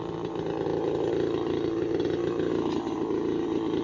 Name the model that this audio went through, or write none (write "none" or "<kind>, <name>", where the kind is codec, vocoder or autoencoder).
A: vocoder, BigVGAN v2